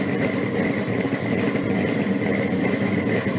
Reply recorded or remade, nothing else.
recorded